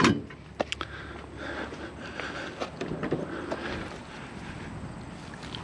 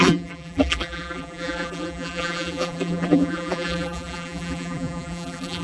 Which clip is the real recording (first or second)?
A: first